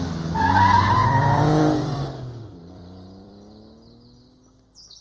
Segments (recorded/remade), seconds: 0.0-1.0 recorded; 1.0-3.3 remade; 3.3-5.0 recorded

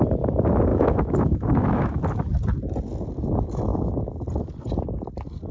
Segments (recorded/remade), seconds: 0.0-0.7 recorded; 0.7-2.0 remade; 2.0-5.5 recorded

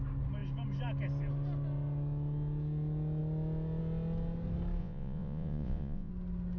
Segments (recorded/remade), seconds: 0.0-4.8 recorded; 4.8-6.1 remade; 6.1-6.6 recorded